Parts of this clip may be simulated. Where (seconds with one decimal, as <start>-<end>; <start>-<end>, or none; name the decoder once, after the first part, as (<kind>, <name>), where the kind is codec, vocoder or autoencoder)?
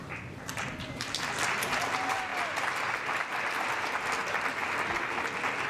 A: none